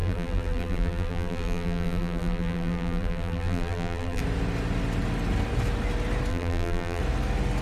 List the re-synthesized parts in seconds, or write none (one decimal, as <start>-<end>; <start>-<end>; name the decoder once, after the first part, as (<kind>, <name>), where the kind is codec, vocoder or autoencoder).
0.0-4.2 (vocoder, BigVGAN v2); 6.3-7.0